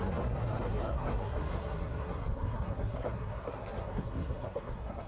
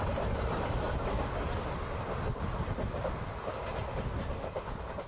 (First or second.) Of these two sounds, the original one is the second